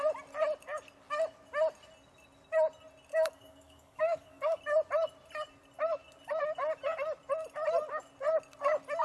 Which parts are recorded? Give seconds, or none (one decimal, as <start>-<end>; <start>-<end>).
0.0-3.1; 4.6-9.0